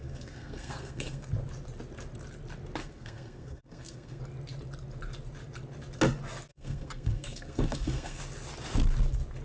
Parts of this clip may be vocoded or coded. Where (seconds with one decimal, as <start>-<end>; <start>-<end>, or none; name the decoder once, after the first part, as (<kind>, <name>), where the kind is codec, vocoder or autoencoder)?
0.0-1.3 (codec, SNAC); 2.8-4.2; 6.5-8.2